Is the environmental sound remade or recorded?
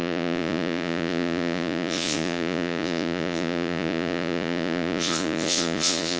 remade